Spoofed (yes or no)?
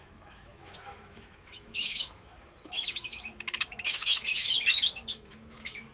yes